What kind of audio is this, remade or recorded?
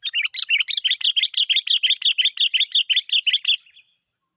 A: recorded